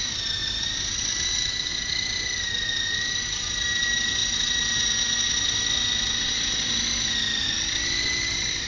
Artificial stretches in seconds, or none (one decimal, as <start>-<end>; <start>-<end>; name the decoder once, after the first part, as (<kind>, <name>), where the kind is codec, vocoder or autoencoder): 0.4-1.7 (vocoder, BigVGAN v2)